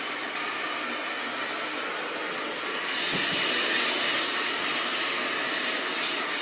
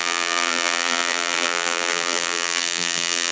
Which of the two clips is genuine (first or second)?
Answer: first